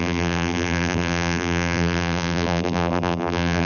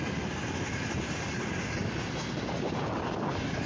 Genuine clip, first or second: second